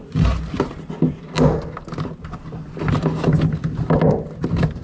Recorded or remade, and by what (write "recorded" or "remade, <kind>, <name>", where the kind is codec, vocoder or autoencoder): recorded